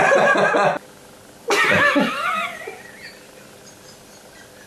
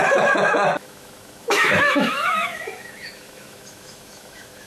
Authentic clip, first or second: first